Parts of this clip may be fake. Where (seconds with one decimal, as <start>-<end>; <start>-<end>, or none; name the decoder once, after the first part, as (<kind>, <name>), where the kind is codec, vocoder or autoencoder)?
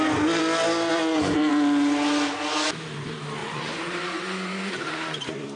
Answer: 0.9-1.5 (vocoder, Vocos); 3.4-4.7